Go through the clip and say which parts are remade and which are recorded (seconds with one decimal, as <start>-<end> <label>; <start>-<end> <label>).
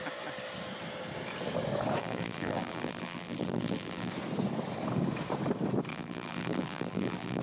0.0-2.0 recorded; 2.0-4.1 remade; 4.1-5.9 recorded; 5.9-7.4 remade